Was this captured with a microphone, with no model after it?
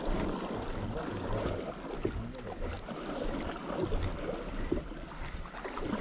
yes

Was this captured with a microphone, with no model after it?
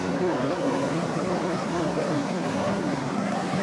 no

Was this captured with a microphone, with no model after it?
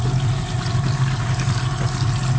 yes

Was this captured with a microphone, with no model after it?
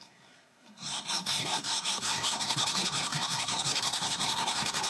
no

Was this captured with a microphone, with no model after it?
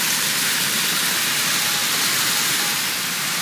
yes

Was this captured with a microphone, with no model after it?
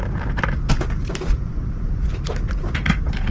yes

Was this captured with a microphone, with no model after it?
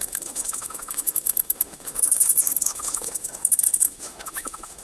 no